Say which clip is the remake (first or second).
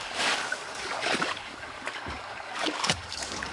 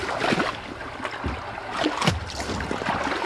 first